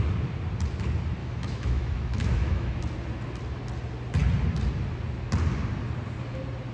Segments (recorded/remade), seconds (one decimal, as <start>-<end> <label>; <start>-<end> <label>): 0.0-1.2 recorded; 1.2-2.8 remade; 2.8-6.7 recorded